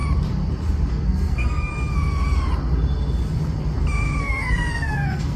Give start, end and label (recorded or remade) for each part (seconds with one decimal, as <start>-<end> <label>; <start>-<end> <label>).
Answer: 0.0-0.9 recorded; 0.9-1.7 remade; 1.7-4.2 recorded; 4.2-5.4 remade